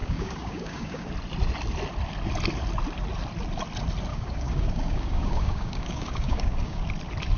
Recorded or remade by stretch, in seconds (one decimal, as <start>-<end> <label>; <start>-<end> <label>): 0.0-1.1 remade; 1.1-4.1 recorded; 4.1-6.8 remade; 6.8-7.4 recorded

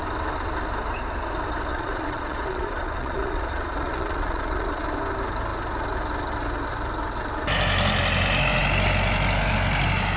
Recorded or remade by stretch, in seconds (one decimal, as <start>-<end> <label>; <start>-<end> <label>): 0.0-1.7 recorded; 1.7-4.8 remade; 4.8-10.2 recorded

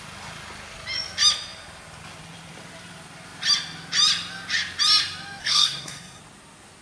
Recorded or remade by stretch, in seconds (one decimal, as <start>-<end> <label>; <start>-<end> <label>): 0.0-5.4 recorded; 5.4-6.2 remade; 6.2-6.8 recorded

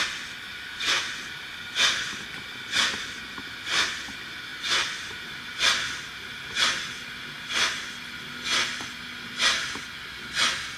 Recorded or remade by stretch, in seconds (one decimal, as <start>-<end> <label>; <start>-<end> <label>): 0.0-10.8 recorded